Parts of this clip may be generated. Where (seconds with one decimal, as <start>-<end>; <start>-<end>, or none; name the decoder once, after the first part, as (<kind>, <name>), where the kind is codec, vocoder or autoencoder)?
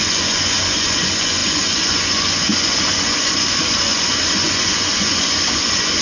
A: 0.0-6.0 (vocoder, Vocos)